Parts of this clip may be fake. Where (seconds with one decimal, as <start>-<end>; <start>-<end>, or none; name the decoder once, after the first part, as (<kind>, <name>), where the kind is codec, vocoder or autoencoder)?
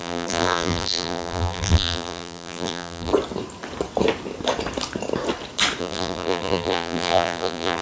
0.0-3.1 (vocoder, BigVGAN v2); 5.8-7.8